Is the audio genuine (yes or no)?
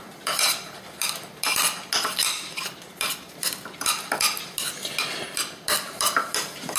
yes